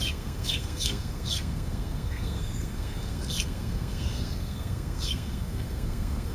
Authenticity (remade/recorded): remade